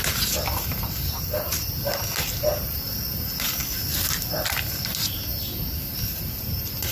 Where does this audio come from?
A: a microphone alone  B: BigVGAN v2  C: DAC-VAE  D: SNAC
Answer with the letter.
A